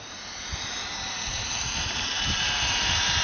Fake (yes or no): yes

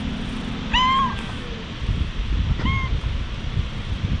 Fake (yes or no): no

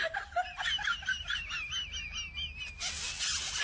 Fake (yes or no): no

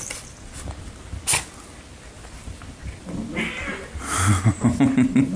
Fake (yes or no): no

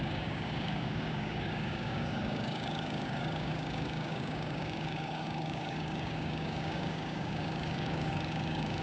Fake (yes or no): yes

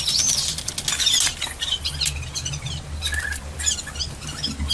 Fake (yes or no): no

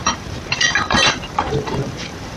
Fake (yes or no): yes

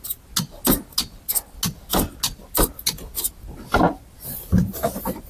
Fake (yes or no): no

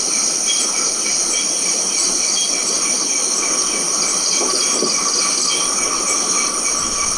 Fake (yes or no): no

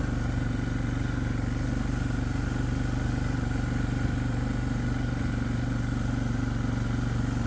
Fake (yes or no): no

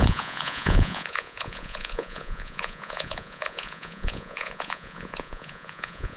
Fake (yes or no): yes